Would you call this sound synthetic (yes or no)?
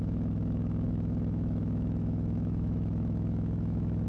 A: yes